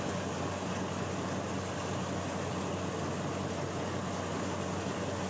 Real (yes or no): yes